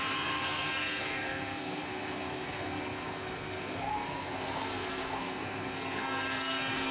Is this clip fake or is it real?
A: fake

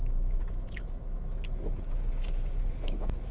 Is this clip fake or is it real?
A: fake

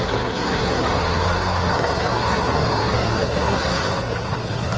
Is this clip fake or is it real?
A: fake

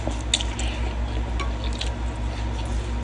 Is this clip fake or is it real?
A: real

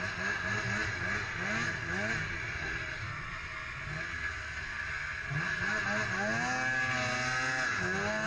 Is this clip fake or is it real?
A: real